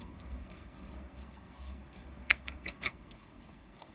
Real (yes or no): no